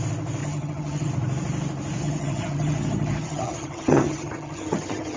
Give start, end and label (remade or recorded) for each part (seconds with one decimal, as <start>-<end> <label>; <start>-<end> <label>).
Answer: 0.0-0.4 recorded; 0.4-1.1 remade; 1.1-2.0 recorded; 2.0-5.2 remade